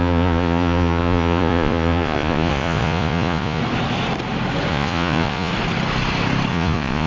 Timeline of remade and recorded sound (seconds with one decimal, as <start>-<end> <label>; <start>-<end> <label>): 0.0-3.6 remade; 3.6-4.7 recorded; 4.7-5.5 remade; 5.5-6.5 recorded; 6.5-7.1 remade